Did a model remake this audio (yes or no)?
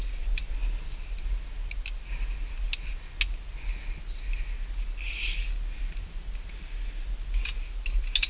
no